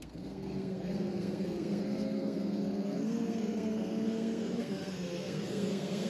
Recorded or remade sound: remade